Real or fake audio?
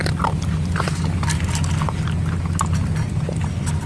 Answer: real